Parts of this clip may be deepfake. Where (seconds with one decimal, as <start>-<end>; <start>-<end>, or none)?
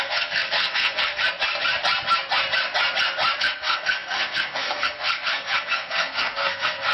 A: 0.0-1.2; 3.4-6.9